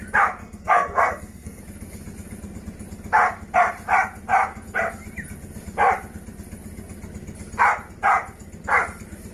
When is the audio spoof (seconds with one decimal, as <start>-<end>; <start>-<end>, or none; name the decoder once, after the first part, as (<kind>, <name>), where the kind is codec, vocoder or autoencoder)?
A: 0.4-1.6 (codec, SNAC)

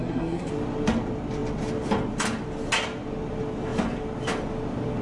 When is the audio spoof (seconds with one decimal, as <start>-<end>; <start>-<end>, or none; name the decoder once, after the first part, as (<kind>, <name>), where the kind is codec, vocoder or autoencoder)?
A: 0.0-0.5 (codec, SNAC)

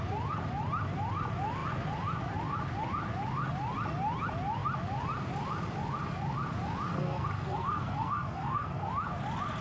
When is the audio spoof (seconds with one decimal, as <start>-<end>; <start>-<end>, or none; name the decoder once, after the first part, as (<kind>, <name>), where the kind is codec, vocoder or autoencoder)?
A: 6.9-8.9 (codec, SNAC)